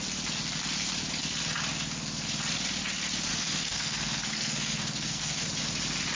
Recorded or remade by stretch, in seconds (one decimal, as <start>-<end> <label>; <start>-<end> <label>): 0.0-3.3 recorded; 3.3-5.4 remade; 5.4-6.1 recorded